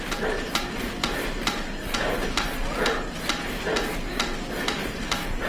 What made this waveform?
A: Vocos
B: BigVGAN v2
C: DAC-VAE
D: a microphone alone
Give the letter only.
D